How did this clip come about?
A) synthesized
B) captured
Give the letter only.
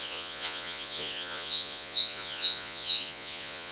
A